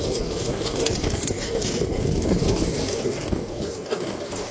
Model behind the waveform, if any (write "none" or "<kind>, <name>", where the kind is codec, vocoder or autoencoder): codec, DAC